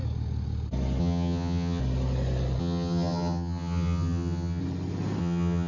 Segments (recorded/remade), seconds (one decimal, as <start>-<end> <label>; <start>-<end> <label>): 0.0-1.0 recorded; 1.0-1.8 remade; 1.8-2.6 recorded; 2.6-4.6 remade; 4.6-5.2 recorded; 5.2-5.7 remade